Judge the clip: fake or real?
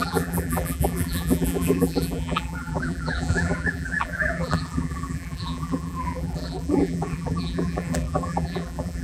fake